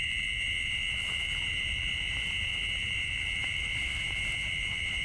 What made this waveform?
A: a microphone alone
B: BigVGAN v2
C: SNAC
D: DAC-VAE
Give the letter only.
B